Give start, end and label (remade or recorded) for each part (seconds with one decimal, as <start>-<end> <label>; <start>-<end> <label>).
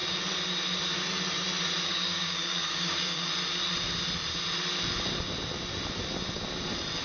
0.0-1.9 recorded; 1.9-3.3 remade; 3.3-7.0 recorded